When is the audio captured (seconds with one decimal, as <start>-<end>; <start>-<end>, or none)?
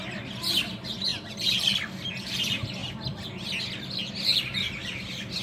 0.0-5.4